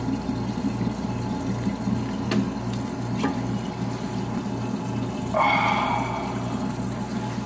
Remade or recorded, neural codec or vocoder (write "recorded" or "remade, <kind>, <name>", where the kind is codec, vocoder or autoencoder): recorded